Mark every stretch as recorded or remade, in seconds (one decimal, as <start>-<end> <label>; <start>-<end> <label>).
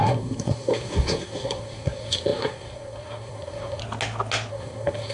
0.0-3.8 remade; 3.8-4.5 recorded; 4.5-5.1 remade